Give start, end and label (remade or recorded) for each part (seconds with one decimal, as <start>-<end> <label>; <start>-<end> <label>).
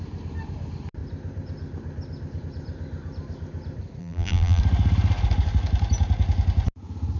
0.0-4.0 recorded; 4.0-4.6 remade; 4.6-7.2 recorded